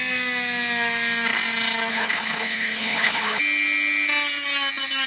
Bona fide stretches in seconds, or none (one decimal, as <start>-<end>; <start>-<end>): 0.0-1.9; 3.4-5.1